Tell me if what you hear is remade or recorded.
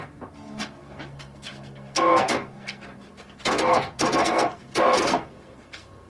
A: remade